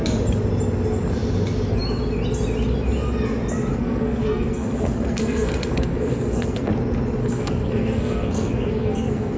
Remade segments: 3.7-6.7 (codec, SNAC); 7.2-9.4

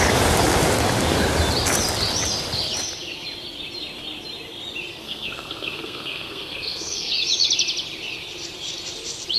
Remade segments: 5.0-7.1 (codec, SNAC)

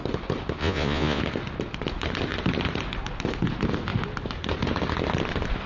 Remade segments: 0.6-1.2 (vocoder, Vocos)

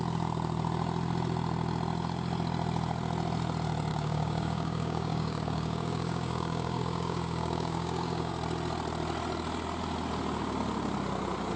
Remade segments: 3.9-8.3 (codec, DAC)

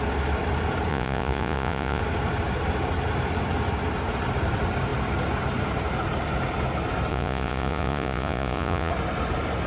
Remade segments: 0.9-2.0 (vocoder, Vocos); 7.1-8.9

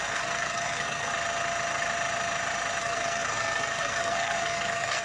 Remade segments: 0.0-1.1 (codec, SNAC); 2.8-5.0